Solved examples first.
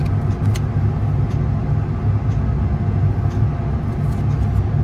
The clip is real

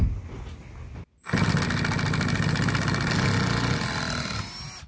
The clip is real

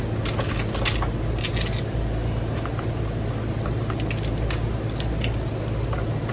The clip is real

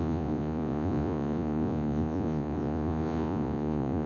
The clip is fake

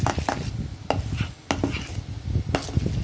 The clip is real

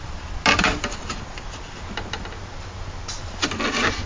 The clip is real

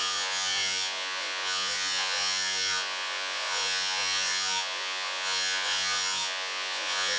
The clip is fake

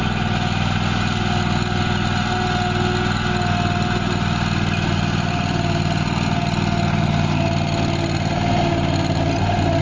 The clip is real